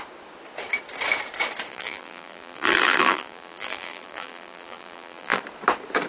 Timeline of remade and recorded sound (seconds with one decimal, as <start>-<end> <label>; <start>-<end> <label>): 0.0-1.7 recorded; 1.7-5.4 remade; 5.4-6.1 recorded